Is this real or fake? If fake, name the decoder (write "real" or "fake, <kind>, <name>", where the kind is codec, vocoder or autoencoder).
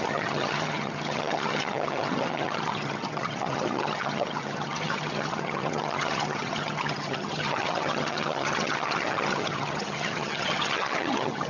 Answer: fake, vocoder, HiFi-GAN